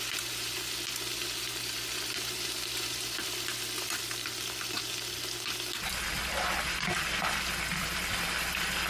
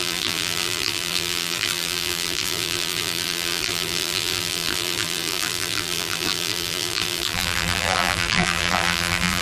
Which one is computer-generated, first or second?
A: second